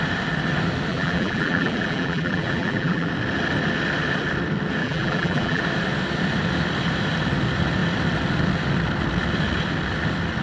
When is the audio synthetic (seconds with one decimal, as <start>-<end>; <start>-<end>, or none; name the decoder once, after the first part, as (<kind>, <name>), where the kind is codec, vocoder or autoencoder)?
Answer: 0.9-3.1 (vocoder, BigVGAN v2); 4.8-5.6